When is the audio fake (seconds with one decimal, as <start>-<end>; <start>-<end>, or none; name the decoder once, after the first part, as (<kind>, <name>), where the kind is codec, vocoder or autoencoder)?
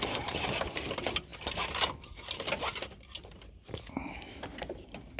none